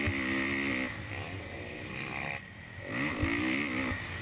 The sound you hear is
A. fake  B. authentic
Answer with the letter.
B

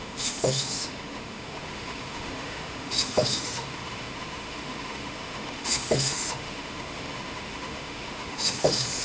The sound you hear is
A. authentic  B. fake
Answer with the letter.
B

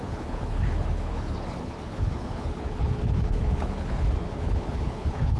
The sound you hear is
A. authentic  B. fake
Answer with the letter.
B